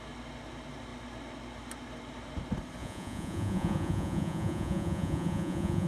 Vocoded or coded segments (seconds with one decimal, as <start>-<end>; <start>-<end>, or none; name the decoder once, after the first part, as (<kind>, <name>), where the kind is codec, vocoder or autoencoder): 2.8-5.9 (vocoder, Vocos)